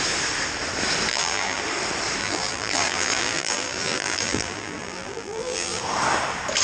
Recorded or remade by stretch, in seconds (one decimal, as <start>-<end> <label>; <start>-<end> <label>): 0.0-1.1 recorded; 1.1-1.6 remade; 1.6-2.2 recorded; 2.2-5.8 remade; 5.8-6.6 recorded